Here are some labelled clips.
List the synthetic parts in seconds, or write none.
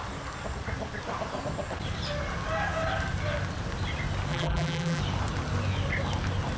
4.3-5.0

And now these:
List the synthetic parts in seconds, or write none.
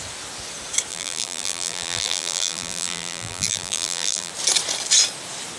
0.9-4.3